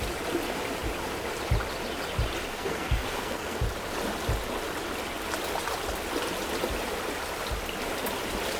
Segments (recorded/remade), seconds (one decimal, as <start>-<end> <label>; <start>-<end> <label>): 0.0-2.5 recorded; 2.5-3.6 remade; 3.6-8.6 recorded